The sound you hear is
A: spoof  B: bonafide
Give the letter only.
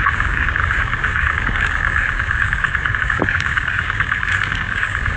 A